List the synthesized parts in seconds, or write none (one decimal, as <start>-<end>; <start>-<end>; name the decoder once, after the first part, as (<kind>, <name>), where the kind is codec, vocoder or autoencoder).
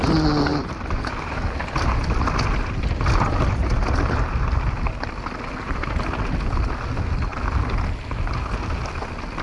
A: none